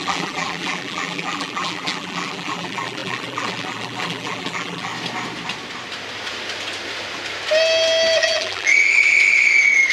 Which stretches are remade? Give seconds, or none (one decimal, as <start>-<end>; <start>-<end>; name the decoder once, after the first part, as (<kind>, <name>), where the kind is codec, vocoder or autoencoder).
0.0-4.9 (vocoder, BigVGAN v2); 8.2-8.7